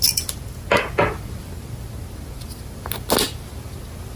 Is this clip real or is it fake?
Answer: real